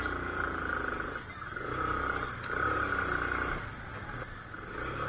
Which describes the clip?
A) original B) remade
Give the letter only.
A